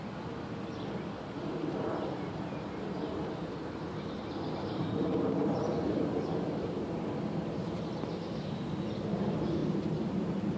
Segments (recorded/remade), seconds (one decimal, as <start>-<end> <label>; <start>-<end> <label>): 0.0-1.6 recorded; 1.6-6.4 remade; 6.4-9.6 recorded; 9.6-10.2 remade; 10.2-10.6 recorded

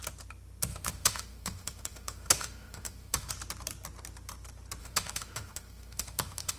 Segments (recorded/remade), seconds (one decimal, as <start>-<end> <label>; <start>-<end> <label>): 0.0-0.7 recorded; 0.7-3.3 remade; 3.3-4.8 recorded; 4.8-6.6 remade

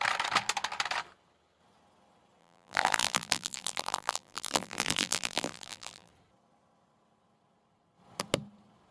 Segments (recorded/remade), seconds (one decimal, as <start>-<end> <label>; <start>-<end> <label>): 0.0-2.4 recorded; 2.4-6.1 remade; 6.1-8.9 recorded

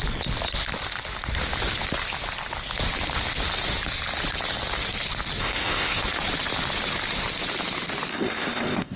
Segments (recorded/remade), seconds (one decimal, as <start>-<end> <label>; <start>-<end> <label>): 0.0-5.4 recorded; 5.4-6.0 remade; 6.0-8.1 recorded; 8.1-9.0 remade

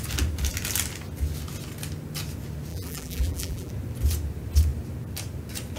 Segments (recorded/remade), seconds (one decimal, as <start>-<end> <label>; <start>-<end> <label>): 0.0-2.7 recorded; 2.7-3.7 remade; 3.7-5.8 recorded